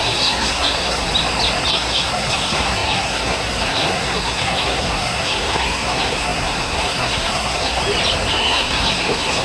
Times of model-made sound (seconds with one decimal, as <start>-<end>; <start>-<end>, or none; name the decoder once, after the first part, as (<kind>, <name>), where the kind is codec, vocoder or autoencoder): 0.0-1.1 (codec, SNAC); 1.7-7.8; 8.3-9.4